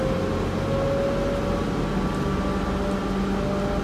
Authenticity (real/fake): real